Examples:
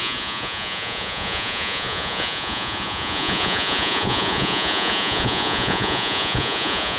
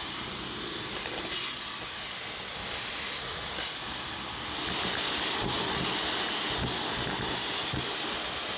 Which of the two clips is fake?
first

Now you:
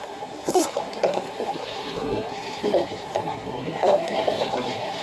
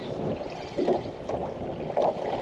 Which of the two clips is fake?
first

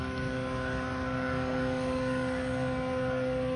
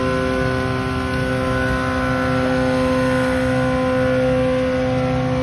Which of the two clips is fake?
first